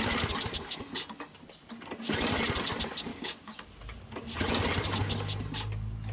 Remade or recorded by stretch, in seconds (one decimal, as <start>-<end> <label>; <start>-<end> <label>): 0.0-3.1 recorded; 3.1-3.7 remade; 3.7-6.1 recorded